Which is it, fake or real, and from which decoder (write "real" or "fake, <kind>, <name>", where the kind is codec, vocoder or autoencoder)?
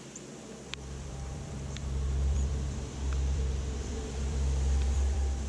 fake, vocoder, BigVGAN v2